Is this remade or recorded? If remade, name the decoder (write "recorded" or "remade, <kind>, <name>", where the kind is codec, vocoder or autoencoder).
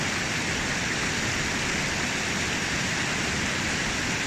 recorded